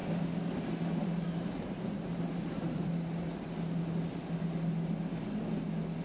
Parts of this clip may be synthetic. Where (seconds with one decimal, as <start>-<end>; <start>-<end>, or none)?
1.0-2.9